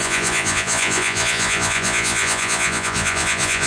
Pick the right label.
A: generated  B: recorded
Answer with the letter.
A